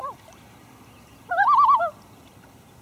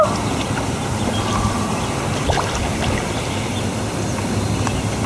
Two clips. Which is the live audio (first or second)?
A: second